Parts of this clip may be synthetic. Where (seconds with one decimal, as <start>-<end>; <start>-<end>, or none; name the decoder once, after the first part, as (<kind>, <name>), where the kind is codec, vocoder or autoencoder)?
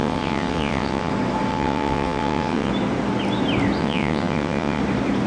0.0-1.1 (vocoder, WaveNeXt); 1.5-2.7; 3.8-4.8